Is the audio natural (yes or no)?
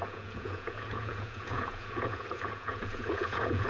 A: no